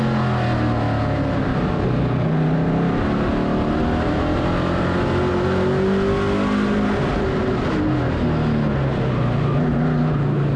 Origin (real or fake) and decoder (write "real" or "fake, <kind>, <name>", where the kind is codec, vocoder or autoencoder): real